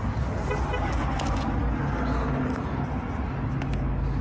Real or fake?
real